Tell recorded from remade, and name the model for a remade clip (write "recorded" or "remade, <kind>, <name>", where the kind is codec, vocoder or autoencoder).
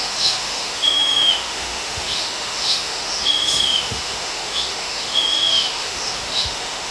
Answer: remade, autoencoder, DAC-VAE